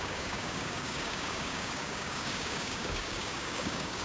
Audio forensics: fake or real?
fake